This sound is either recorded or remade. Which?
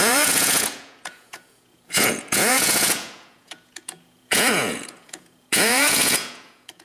remade